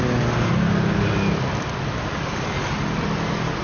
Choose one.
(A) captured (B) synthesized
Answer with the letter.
A